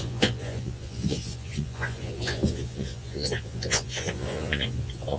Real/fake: fake